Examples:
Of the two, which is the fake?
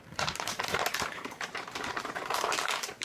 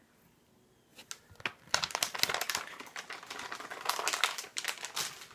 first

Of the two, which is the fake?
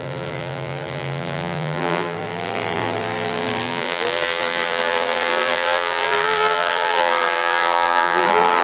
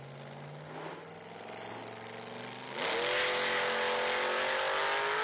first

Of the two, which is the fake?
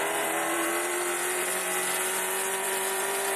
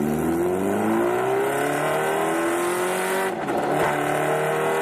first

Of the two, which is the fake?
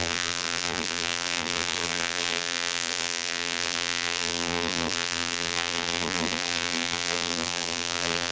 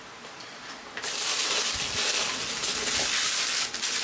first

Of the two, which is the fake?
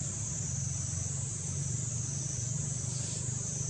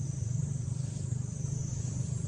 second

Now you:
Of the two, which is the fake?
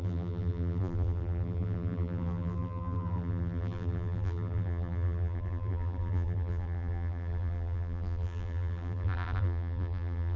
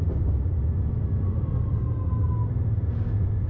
first